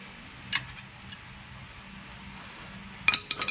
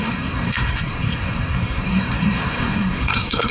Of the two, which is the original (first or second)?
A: first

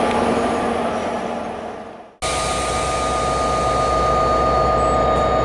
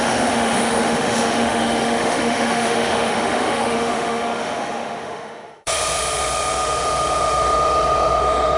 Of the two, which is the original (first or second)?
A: first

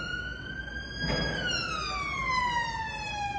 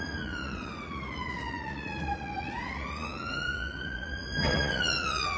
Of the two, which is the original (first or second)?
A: first